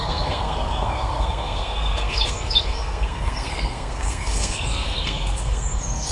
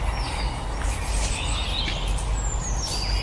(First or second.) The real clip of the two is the second